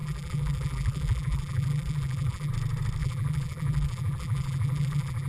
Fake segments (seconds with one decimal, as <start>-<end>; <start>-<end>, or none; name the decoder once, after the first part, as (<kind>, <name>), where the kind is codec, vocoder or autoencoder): 0.0-2.5 (vocoder, BigVGAN v2); 3.0-5.3